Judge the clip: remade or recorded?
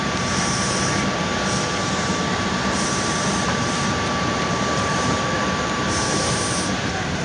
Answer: remade